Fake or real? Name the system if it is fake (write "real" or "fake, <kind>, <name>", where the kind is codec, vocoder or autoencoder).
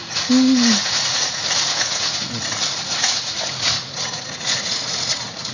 fake, vocoder, Vocos